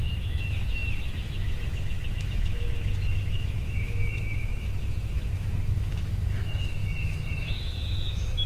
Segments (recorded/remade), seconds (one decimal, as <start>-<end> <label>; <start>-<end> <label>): 0.0-8.5 remade

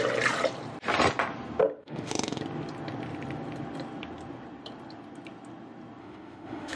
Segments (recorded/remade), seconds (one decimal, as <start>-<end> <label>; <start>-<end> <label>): 0.0-1.8 recorded; 1.8-2.4 remade; 2.4-6.0 recorded; 6.0-6.8 remade

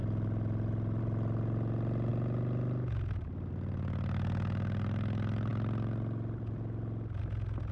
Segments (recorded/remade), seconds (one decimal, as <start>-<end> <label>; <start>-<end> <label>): 0.0-7.7 recorded

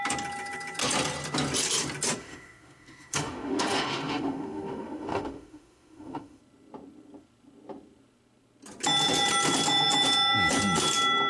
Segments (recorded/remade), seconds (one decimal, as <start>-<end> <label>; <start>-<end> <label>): 0.0-2.2 recorded; 2.2-6.4 remade; 6.4-11.3 recorded

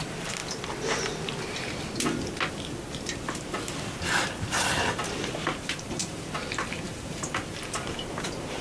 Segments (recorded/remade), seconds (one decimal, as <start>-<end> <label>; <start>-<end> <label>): 0.0-0.4 remade; 0.4-5.6 recorded; 5.6-8.6 remade

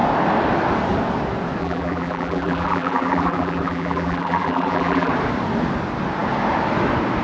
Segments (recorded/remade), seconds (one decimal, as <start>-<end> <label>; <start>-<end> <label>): 0.0-1.6 recorded; 1.6-5.1 remade; 5.1-7.2 recorded

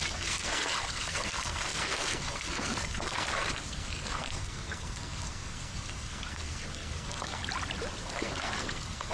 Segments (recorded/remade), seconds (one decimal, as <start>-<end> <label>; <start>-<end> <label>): 0.0-7.4 remade; 7.4-8.0 recorded; 8.0-9.1 remade

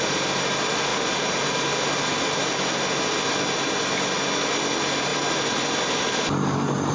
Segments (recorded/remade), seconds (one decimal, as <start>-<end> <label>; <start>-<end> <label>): 0.0-6.9 recorded